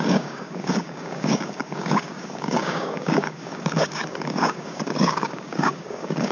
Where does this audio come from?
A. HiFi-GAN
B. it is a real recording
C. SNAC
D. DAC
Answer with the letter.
D